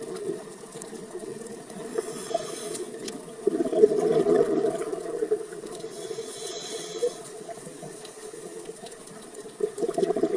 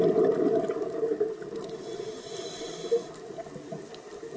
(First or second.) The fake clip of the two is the first